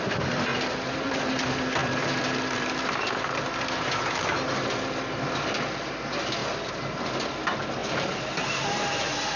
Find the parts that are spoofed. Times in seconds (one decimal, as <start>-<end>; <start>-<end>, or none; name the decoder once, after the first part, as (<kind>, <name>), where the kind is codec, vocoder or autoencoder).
0.5-1.3 (vocoder, BigVGAN v2); 1.8-2.8; 7.8-9.4

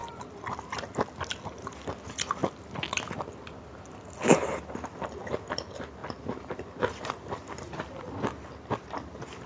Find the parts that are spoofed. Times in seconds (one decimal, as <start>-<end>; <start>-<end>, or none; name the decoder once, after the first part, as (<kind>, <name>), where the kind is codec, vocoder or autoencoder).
0.0-1.2 (vocoder, BigVGAN v2); 6.0-8.1

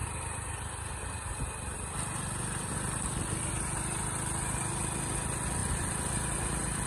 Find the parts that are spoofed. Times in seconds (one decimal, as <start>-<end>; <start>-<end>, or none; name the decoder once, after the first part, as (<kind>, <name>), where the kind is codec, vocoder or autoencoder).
none

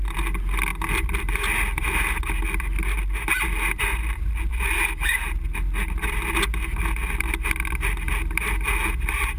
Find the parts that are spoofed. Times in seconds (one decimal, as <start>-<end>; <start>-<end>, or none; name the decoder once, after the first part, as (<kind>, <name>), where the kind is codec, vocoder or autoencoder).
none

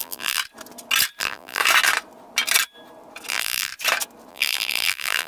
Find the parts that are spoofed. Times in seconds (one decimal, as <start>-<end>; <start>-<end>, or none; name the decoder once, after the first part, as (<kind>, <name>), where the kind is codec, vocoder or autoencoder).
0.0-0.4 (vocoder, BigVGAN v2); 1.2-1.6; 3.3-3.7; 4.3-5.3

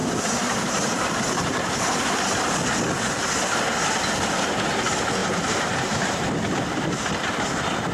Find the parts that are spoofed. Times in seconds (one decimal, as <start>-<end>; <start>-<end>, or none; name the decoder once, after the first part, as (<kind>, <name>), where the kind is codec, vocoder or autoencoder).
0.0-2.1 (vocoder, BigVGAN v2); 5.2-6.4

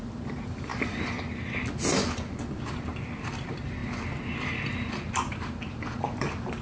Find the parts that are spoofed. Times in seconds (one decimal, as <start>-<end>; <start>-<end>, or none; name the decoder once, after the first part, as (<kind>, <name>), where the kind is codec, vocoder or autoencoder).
0.0-0.7 (vocoder, BigVGAN v2); 2.5-3.8; 6.0-6.6